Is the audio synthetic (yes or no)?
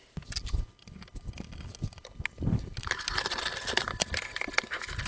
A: no